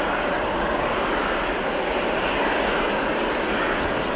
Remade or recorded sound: recorded